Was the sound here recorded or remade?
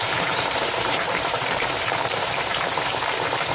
remade